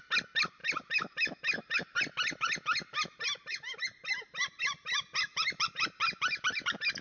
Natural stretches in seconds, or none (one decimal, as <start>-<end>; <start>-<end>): 0.0-7.0